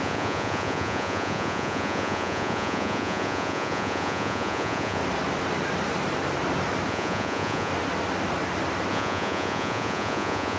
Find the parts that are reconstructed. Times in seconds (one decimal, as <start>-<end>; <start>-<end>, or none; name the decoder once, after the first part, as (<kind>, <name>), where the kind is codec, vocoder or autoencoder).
0.0-5.0 (vocoder, Vocos); 6.9-7.7; 8.9-10.6